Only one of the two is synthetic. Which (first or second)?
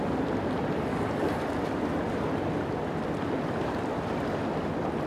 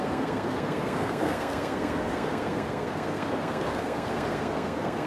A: second